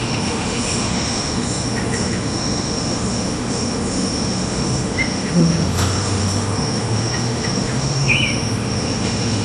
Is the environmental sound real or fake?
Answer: fake